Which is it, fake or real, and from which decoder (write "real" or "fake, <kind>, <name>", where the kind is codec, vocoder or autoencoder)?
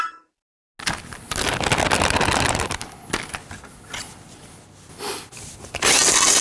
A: real